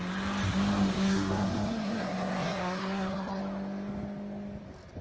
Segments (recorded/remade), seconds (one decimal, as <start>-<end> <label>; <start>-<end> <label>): 0.0-0.9 recorded; 0.9-3.4 remade; 3.4-5.0 recorded